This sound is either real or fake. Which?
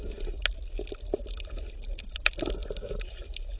real